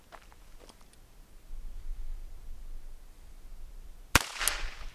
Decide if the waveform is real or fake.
real